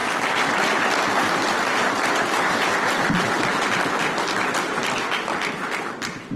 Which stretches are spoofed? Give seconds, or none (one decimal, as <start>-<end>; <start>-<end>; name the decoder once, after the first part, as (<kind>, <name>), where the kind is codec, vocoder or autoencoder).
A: none